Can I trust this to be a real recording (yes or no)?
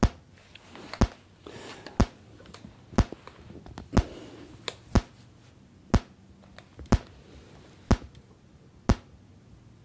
yes